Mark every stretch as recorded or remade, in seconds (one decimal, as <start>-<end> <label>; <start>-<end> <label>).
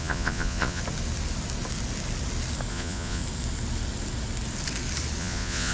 0.0-0.8 remade; 0.8-2.7 recorded; 2.7-3.2 remade; 3.2-5.2 recorded; 5.2-5.7 remade